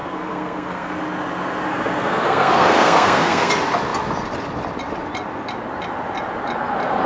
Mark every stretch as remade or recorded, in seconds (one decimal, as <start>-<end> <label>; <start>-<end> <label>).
0.0-1.0 remade; 1.0-1.7 recorded; 1.7-3.5 remade; 3.5-7.1 recorded